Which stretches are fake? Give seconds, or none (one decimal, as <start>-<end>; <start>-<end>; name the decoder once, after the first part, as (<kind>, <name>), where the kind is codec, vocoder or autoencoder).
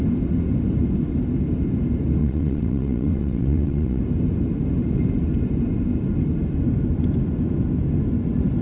2.2-4.0 (vocoder, WaveNeXt)